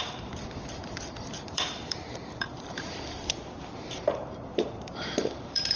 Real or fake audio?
fake